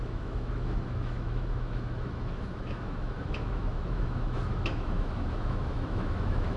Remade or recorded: remade